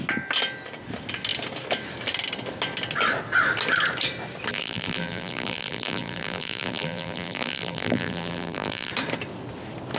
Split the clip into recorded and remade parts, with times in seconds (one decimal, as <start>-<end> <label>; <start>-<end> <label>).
0.0-4.5 recorded; 4.5-8.9 remade; 8.9-10.0 recorded